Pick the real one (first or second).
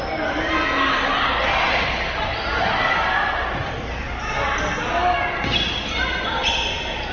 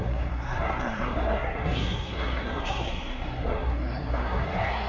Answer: first